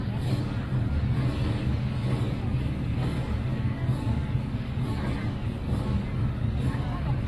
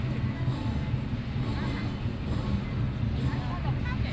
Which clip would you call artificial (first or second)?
first